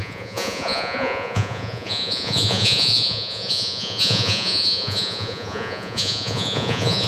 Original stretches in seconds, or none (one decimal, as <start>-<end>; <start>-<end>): none